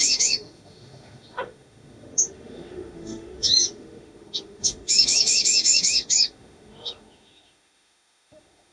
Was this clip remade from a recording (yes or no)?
yes